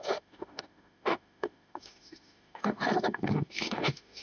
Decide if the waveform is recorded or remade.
remade